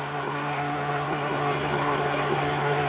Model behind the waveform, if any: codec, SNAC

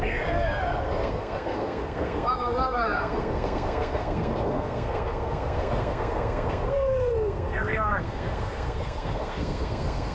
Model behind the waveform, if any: codec, SNAC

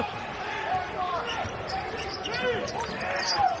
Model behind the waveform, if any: none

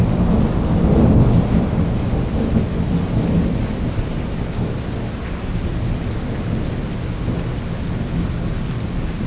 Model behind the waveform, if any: none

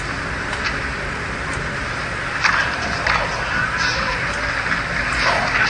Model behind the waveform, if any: none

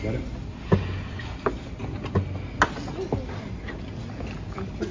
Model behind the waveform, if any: none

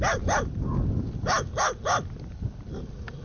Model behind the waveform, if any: none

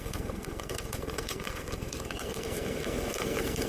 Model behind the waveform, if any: codec, SNAC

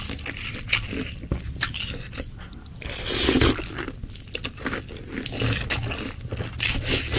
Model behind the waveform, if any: none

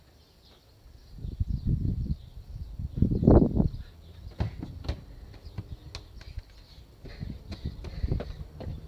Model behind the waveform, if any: none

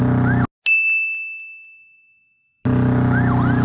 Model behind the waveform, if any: none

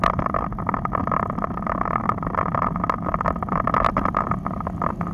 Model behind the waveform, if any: none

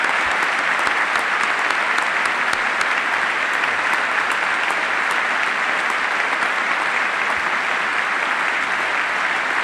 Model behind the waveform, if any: none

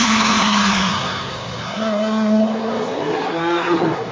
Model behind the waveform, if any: codec, SNAC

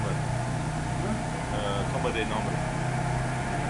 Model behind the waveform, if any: none